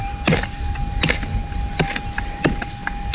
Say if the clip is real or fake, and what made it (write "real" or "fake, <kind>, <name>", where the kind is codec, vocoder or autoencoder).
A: real